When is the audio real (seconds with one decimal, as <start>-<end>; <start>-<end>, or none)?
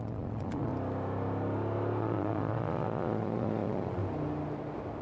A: 0.7-2.0; 4.0-5.0